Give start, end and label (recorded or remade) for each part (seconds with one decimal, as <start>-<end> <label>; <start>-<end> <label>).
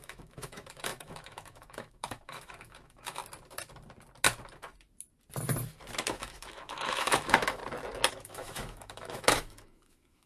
0.0-3.2 remade; 3.2-6.1 recorded; 6.1-7.6 remade; 7.6-8.1 recorded; 8.1-10.3 remade